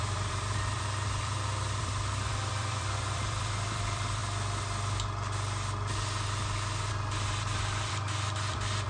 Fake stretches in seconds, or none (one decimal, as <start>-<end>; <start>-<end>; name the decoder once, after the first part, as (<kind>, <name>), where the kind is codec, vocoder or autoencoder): 0.0-4.2 (vocoder, BigVGAN v2); 6.9-8.9